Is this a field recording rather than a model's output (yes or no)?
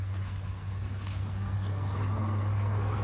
no